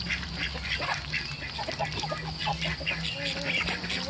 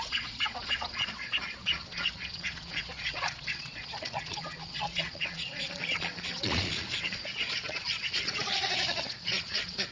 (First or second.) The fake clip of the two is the second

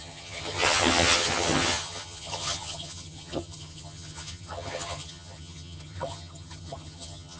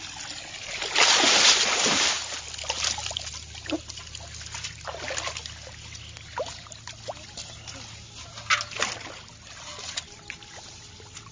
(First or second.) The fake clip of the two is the first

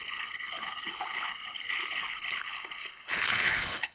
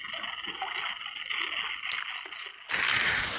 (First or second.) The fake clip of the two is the first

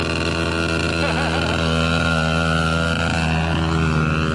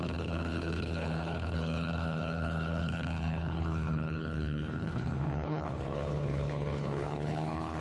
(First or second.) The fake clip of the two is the second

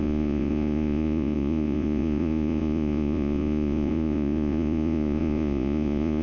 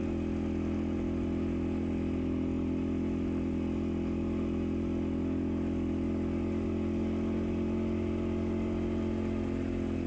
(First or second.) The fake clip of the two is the first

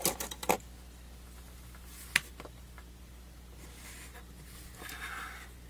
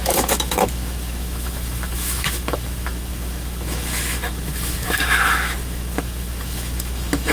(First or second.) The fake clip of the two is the second